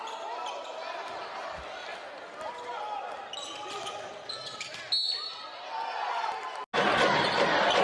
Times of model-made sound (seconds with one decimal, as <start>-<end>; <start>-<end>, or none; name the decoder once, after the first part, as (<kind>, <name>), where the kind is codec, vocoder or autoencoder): none